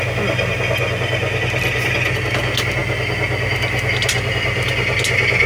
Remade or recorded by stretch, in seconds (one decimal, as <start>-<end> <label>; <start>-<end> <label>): 0.0-5.5 recorded